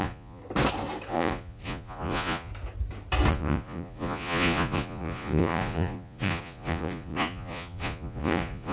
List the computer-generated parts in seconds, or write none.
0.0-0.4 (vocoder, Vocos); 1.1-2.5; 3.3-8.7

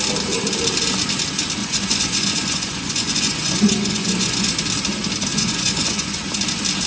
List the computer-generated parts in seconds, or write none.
1.6-4.5 (vocoder, Vocos); 5.3-6.2

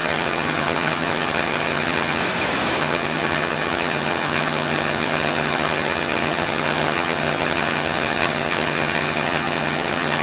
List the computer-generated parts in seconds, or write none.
0.0-2.2 (vocoder, HiFi-GAN); 2.8-10.2

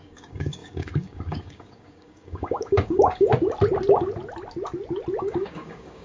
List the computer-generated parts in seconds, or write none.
0.0-3.3 (codec, DAC); 5.2-6.0